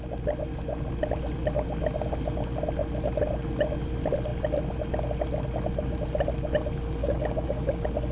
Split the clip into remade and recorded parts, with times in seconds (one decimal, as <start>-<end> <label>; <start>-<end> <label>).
0.0-7.0 recorded; 7.0-7.6 remade; 7.6-8.1 recorded